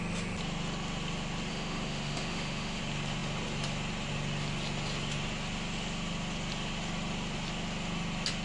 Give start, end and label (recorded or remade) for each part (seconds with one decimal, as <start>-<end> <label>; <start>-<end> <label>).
0.0-1.5 recorded; 1.5-2.8 remade; 2.8-8.4 recorded